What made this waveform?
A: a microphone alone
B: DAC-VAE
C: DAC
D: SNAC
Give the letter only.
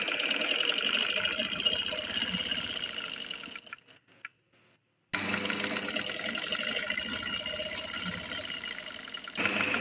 A